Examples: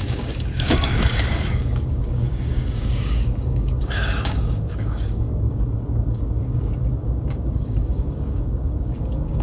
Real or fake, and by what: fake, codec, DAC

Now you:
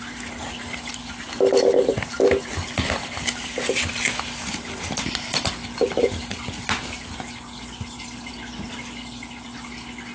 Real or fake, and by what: real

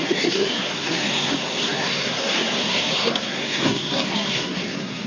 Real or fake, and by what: fake, codec, SNAC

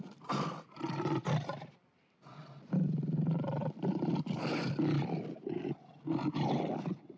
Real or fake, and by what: fake, vocoder, BigVGAN v2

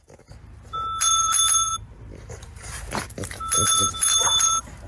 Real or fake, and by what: fake, vocoder, BigVGAN v2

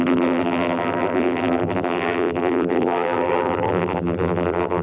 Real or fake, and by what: fake, vocoder, BigVGAN v2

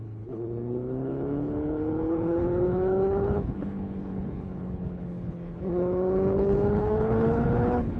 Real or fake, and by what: fake, codec, HILCodec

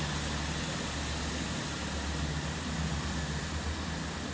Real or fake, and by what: real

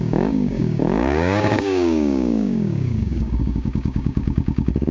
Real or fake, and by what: fake, codec, DAC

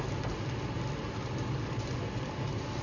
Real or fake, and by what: real